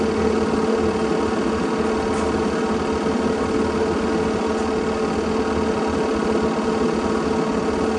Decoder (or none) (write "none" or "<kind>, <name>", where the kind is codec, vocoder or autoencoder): none